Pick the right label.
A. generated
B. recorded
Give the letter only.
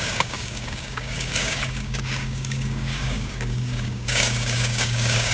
A